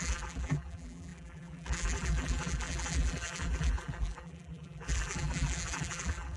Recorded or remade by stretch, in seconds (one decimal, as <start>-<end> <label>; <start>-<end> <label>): 0.0-6.4 remade